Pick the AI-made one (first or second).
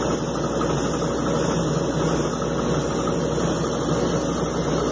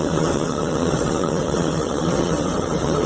second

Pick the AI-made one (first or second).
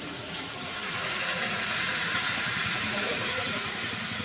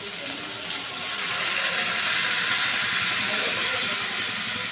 first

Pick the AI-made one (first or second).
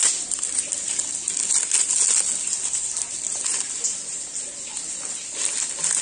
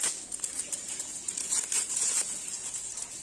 second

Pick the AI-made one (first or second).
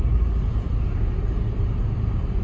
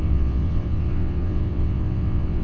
second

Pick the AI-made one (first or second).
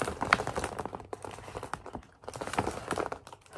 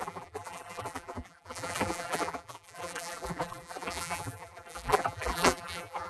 second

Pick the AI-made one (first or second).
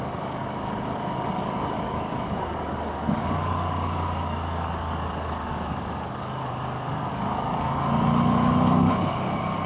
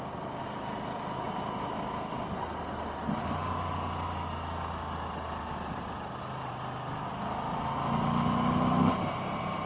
first